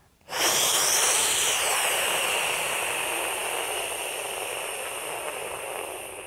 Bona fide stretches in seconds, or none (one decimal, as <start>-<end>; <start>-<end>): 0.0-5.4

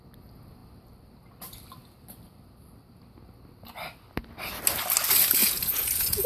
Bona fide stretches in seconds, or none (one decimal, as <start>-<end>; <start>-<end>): 0.0-5.4

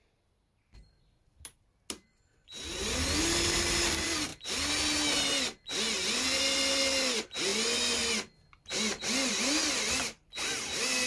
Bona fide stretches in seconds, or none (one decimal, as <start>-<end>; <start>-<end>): 0.0-11.1

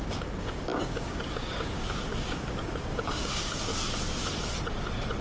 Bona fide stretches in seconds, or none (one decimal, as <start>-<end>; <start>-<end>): 3.7-5.2

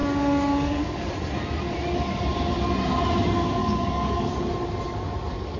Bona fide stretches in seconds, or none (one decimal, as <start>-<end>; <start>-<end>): 1.1-3.6; 4.3-5.6

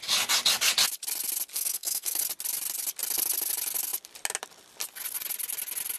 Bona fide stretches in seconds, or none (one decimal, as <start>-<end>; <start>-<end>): 0.0-1.5; 2.2-6.0